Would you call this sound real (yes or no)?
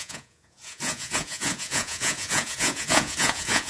no